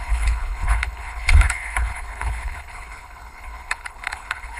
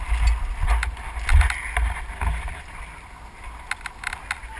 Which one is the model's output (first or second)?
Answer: first